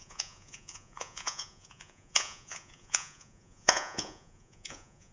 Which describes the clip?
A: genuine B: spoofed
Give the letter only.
B